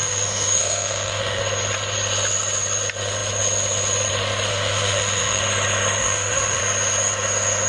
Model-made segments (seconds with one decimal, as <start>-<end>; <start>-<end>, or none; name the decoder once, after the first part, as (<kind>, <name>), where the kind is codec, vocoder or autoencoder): 0.0-1.4 (autoencoder, DAC-VAE); 4.5-5.4; 6.0-6.6